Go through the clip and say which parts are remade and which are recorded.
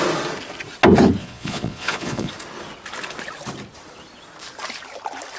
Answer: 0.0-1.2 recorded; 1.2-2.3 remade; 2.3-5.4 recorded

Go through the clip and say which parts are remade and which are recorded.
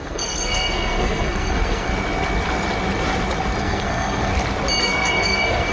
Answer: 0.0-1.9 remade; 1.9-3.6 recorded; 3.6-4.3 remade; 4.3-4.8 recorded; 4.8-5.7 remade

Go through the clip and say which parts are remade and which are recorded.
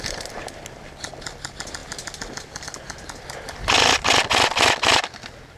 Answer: 0.0-5.6 recorded